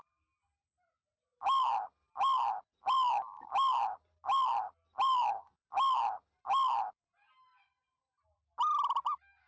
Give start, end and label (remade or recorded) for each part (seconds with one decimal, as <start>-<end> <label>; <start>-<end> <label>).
0.0-9.5 recorded